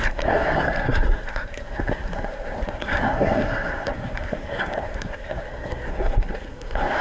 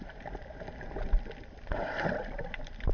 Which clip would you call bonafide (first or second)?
second